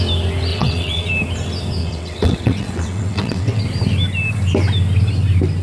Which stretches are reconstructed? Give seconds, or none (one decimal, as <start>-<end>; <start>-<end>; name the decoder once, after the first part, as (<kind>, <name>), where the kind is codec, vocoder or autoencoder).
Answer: 0.5-1.1 (vocoder, WaveNeXt); 1.8-3.6